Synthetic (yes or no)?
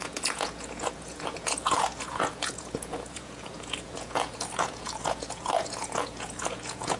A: yes